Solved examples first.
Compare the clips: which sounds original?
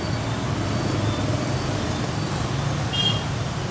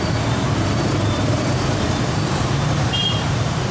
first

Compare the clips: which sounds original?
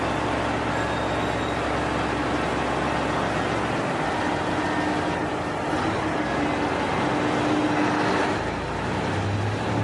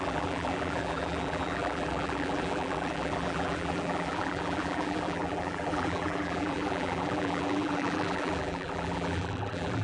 first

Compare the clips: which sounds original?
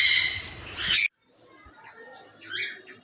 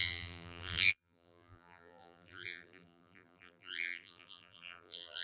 first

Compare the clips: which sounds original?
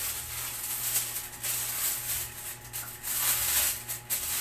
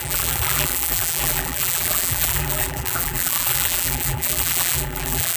first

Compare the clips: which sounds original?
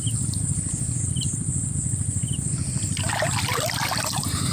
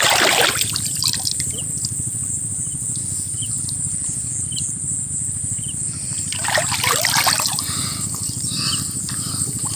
second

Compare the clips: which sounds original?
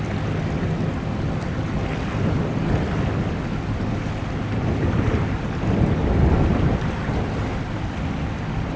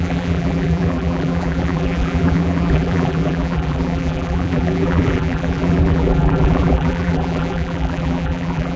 first